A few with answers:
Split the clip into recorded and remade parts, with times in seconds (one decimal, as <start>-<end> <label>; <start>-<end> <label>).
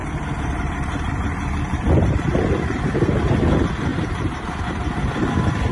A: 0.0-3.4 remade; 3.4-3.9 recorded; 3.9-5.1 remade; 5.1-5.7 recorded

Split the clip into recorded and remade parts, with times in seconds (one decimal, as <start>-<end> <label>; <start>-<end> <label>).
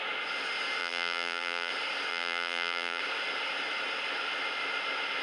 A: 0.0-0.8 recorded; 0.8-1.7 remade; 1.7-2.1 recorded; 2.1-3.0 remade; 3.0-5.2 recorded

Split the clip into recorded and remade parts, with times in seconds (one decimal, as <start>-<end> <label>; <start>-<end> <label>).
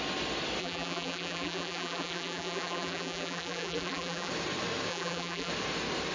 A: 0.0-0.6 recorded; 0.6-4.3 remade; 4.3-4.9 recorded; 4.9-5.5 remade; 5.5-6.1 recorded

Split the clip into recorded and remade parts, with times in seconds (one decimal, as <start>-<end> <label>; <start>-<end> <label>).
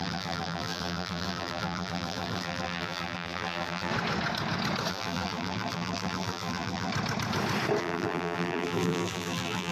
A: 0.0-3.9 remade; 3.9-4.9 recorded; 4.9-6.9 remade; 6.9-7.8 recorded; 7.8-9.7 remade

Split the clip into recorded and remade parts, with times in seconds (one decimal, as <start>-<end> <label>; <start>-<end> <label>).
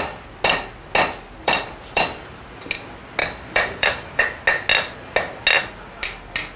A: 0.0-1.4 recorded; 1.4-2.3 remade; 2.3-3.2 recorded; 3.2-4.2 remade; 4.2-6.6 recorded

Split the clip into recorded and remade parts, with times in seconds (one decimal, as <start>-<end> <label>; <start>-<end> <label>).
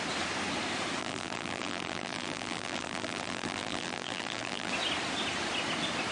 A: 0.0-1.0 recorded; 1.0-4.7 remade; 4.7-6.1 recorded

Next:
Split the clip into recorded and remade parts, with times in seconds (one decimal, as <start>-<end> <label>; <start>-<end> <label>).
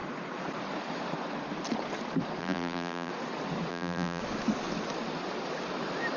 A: 0.0-2.4 recorded; 2.4-3.1 remade; 3.1-3.7 recorded; 3.7-4.2 remade; 4.2-6.2 recorded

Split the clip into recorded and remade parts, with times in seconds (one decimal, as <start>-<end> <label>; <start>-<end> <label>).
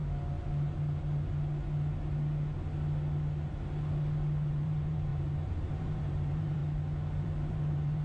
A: 0.0-4.5 recorded; 4.5-6.6 remade; 6.6-7.2 recorded; 7.2-8.0 remade